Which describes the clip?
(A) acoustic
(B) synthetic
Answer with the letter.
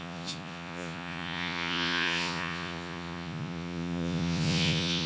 B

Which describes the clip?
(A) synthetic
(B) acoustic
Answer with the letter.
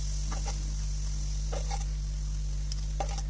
B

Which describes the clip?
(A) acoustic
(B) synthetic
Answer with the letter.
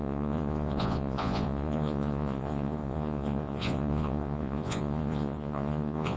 B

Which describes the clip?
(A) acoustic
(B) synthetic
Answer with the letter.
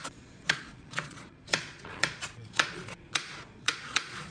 B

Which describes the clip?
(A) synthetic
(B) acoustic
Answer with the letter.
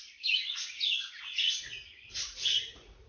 A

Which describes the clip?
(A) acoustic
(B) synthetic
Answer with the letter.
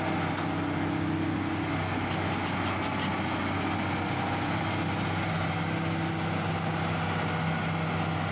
A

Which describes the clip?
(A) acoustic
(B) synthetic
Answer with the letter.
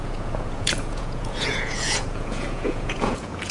B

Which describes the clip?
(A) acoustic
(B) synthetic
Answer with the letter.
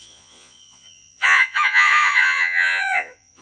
B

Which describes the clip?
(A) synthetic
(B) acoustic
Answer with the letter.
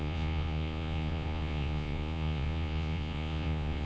A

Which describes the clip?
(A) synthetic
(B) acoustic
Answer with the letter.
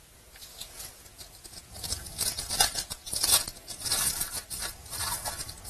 A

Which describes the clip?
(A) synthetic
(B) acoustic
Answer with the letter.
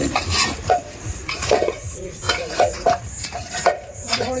A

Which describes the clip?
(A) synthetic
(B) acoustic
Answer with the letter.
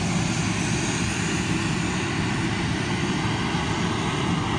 B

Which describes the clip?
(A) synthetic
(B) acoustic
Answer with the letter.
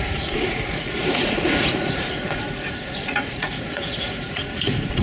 A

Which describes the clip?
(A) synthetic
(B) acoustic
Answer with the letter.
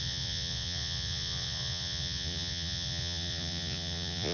A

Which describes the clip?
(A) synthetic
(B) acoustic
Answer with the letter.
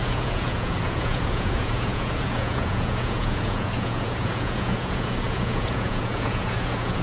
A